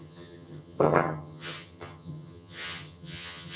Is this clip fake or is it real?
fake